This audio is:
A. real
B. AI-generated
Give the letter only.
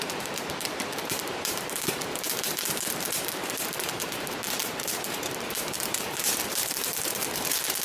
B